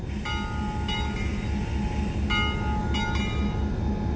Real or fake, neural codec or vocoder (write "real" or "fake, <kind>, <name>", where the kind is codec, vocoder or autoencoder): real